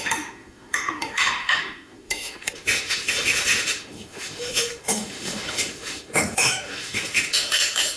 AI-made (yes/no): yes